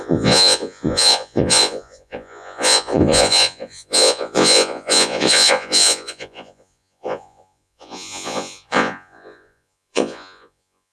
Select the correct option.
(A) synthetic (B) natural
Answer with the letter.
A